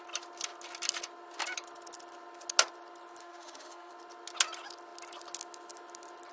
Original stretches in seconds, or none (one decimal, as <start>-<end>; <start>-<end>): 0.0-3.2; 3.9-6.3